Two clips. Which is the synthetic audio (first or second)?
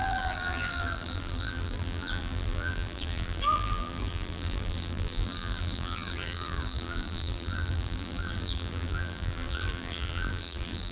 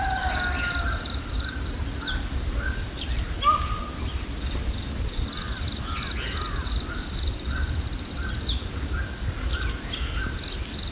first